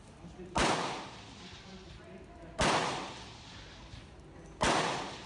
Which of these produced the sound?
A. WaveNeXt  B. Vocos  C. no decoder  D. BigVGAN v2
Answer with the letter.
C